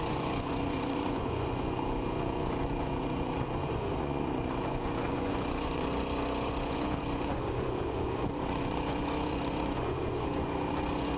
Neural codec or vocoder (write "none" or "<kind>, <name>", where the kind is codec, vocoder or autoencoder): vocoder, Vocos